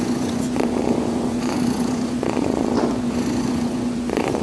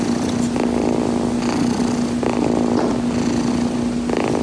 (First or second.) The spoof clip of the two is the first